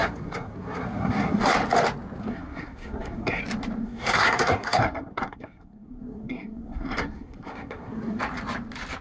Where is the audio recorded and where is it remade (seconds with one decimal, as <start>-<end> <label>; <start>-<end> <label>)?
0.0-1.4 remade; 1.4-2.2 recorded; 2.2-3.4 remade; 3.4-3.8 recorded; 3.8-8.2 remade; 8.2-9.0 recorded